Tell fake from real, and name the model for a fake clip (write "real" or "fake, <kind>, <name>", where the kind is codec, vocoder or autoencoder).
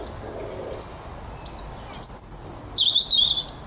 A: real